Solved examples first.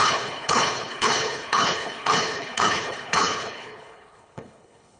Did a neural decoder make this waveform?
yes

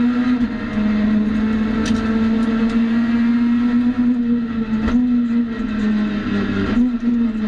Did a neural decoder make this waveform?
no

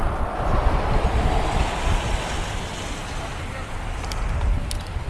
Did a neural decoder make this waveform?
no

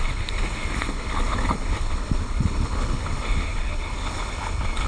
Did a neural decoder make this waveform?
yes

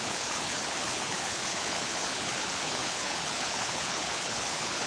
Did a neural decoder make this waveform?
yes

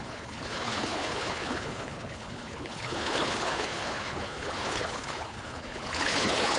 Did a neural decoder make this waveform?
yes